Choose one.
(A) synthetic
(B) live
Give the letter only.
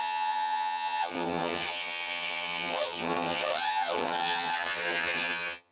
A